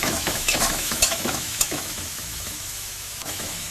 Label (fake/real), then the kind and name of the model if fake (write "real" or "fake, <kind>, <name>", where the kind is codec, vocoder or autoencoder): fake, autoencoder, DAC-VAE